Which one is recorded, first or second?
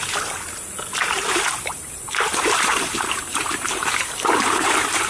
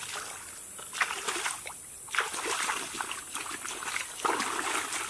second